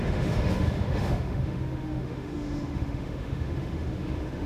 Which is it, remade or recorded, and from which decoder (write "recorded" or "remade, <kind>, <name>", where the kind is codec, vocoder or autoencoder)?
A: remade, autoencoder, DAC-VAE